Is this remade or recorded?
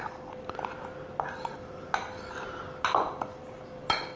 recorded